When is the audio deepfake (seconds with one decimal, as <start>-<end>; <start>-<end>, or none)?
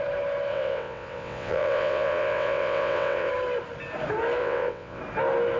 0.5-3.3; 4.4-5.0